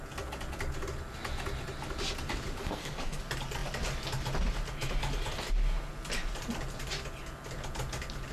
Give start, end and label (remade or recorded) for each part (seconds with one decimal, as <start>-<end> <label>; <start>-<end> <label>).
0.0-2.6 recorded; 2.6-3.2 remade; 3.2-8.3 recorded